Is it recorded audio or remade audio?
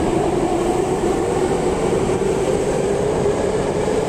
remade